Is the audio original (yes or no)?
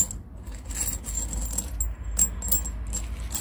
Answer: yes